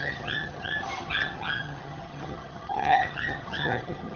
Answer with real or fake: fake